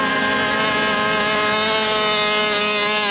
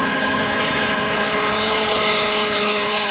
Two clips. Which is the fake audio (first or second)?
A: second